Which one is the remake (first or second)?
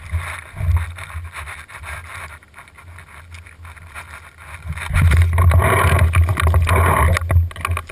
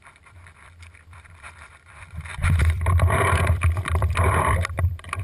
second